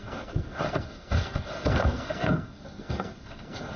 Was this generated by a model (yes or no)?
yes